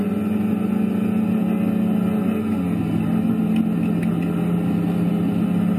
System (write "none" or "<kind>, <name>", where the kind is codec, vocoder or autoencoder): none